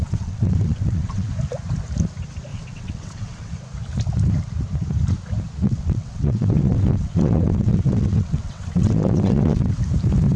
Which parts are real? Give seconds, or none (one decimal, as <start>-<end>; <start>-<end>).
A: 1.3-2.5; 3.5-5.6; 9.8-10.4